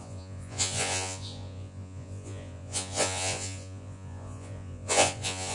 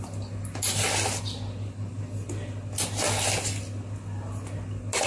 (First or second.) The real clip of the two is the second